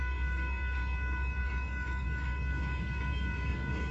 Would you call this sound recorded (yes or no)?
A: no